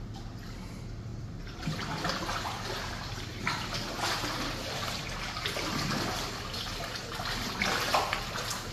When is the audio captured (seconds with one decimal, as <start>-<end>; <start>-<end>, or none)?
0.0-8.7